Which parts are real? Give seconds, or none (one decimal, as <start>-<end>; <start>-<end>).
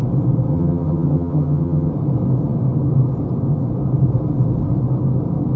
0.0-0.5; 1.9-5.6